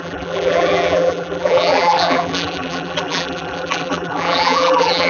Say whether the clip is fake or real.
fake